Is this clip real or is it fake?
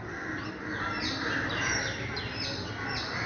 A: real